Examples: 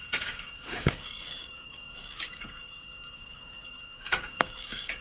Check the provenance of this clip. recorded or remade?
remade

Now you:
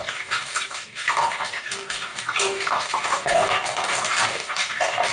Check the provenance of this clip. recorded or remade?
remade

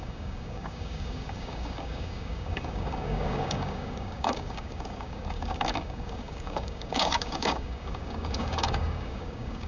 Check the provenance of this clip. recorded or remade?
remade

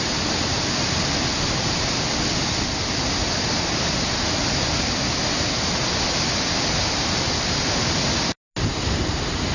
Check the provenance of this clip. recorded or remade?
recorded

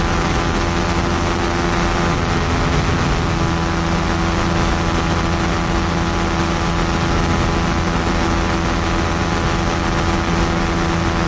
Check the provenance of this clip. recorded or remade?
recorded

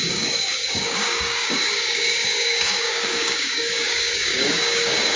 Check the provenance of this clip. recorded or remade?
remade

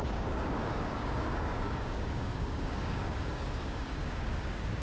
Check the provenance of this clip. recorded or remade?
remade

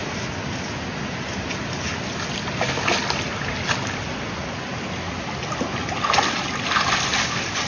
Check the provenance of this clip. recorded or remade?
recorded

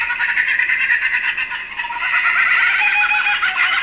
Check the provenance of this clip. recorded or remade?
recorded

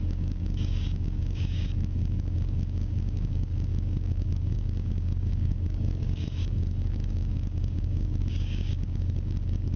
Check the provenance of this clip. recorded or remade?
remade